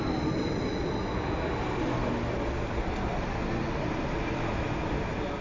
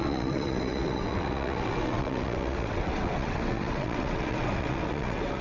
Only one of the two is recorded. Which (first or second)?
first